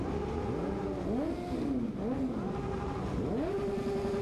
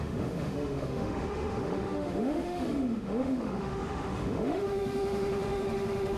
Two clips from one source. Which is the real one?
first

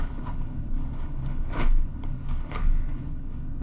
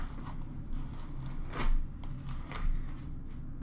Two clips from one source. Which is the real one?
second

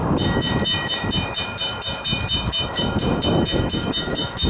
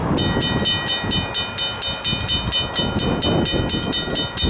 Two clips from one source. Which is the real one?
second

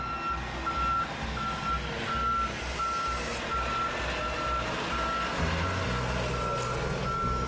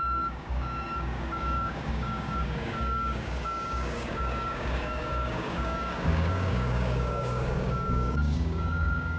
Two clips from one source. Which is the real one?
first